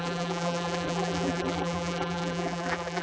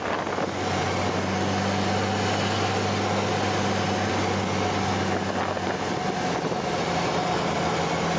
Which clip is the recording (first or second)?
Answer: second